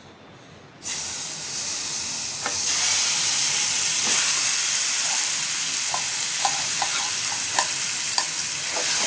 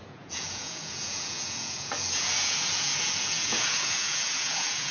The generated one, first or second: second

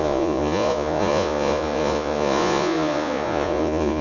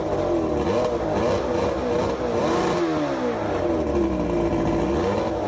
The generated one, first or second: first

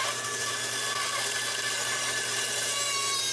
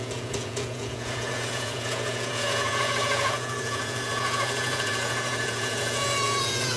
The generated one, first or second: second